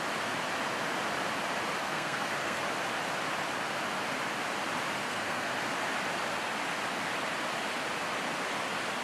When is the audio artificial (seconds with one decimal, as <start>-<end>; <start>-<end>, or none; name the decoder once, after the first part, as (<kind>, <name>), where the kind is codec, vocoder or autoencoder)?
1.8-2.6 (codec, SNAC); 5.0-5.5